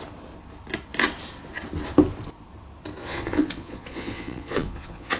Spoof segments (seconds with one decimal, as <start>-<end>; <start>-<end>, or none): 3.0-5.2